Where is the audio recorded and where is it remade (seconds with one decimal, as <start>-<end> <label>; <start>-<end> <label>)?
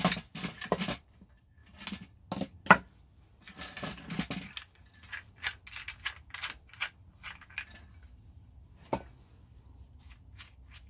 0.0-10.9 recorded